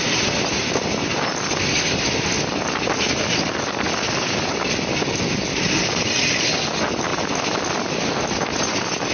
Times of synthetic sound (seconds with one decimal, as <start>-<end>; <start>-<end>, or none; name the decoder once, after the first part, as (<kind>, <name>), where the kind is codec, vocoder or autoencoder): none